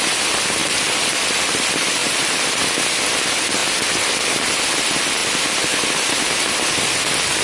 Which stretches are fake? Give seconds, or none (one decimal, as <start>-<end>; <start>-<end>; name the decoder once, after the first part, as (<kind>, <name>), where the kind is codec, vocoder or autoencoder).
0.6-1.6 (vocoder, BigVGAN v2); 2.0-2.6